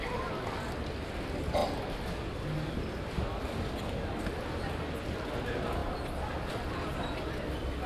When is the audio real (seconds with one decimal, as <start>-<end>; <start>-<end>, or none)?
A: 0.0-7.9